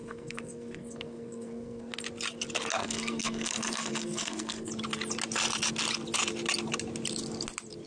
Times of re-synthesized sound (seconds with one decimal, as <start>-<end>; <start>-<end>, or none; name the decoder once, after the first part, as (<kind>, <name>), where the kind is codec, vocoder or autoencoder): 0.0-1.9 (codec, SNAC); 2.8-4.7